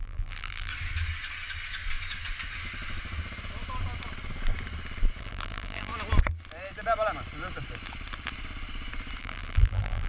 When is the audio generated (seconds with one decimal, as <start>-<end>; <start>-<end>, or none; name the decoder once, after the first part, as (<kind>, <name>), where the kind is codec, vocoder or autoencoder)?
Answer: 0.0-0.7 (vocoder, BigVGAN v2); 5.2-5.9; 9.2-10.1